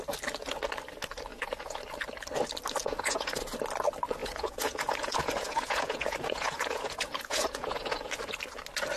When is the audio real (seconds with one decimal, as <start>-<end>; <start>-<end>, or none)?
0.0-1.3; 1.8-2.8; 3.4-4.2; 8.1-9.0